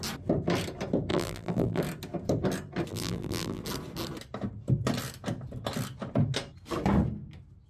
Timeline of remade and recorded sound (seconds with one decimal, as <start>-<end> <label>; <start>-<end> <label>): 0.0-1.1 recorded; 1.1-1.8 remade; 1.8-2.9 recorded; 2.9-3.6 remade; 3.6-7.7 recorded